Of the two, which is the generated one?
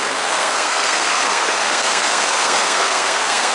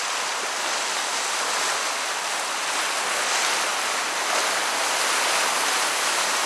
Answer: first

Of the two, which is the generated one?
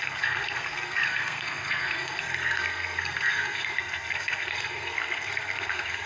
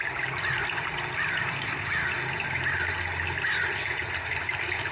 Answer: first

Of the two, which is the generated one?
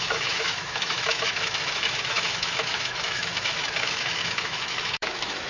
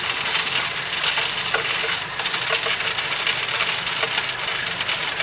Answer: first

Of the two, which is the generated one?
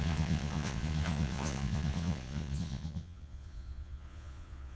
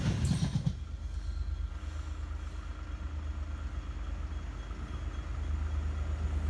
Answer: first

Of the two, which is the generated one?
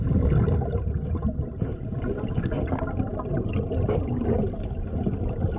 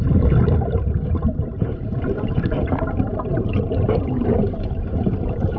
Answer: second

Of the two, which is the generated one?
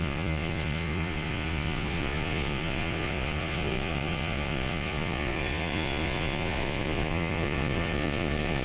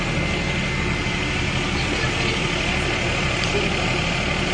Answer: first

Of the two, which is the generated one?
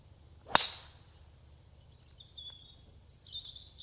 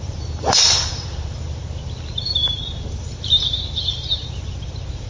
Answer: second